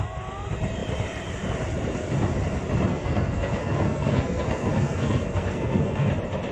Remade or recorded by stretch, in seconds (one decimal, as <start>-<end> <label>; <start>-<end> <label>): 0.0-2.9 recorded; 2.9-6.1 remade; 6.1-6.5 recorded

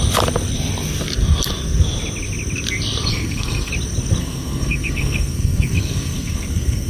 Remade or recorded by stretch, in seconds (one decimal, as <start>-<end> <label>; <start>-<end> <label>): 0.0-3.1 recorded; 3.1-3.7 remade; 3.7-4.2 recorded; 4.2-6.9 remade

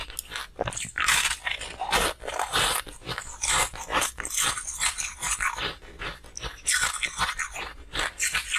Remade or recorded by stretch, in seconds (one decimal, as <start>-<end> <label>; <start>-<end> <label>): 0.0-8.6 recorded

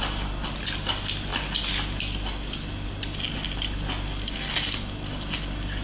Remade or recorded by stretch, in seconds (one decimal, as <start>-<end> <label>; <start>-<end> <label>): 0.0-5.8 recorded